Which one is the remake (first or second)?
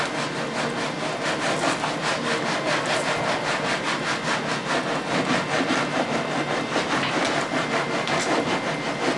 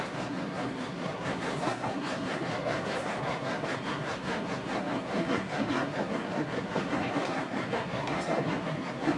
second